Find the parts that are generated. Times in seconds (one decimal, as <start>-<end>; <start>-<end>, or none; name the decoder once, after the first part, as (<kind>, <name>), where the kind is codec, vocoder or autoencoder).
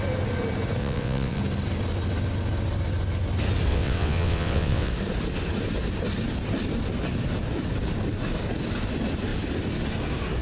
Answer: 0.8-1.4 (vocoder, WaveNeXt); 3.7-4.9